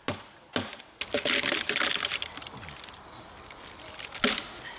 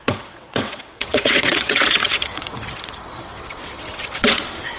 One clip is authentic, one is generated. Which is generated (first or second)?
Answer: second